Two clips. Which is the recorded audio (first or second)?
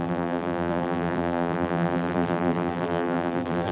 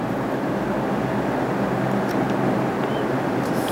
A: second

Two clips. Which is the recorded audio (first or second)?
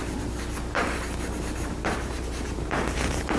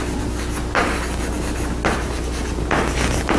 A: second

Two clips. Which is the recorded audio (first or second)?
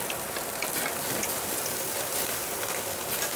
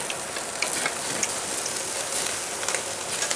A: second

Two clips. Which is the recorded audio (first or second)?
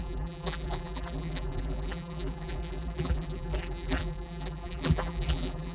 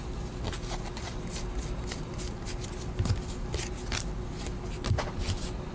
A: second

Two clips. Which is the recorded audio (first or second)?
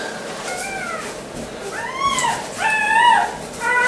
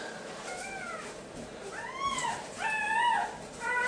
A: first